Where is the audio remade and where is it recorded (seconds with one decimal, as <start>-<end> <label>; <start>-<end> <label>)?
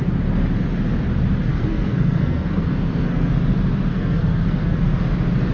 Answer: 0.0-1.5 recorded; 1.5-3.3 remade; 3.3-3.9 recorded; 3.9-5.0 remade; 5.0-5.5 recorded